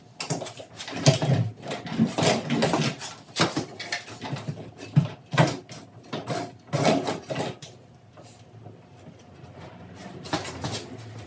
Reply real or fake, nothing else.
real